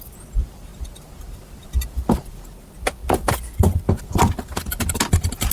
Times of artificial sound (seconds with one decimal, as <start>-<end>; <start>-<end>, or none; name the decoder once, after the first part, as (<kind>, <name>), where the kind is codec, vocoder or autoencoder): none